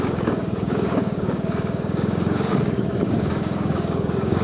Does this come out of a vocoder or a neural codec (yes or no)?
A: yes